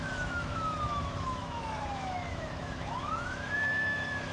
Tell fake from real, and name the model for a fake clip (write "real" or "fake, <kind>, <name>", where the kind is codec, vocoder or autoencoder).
fake, autoencoder, DAC-VAE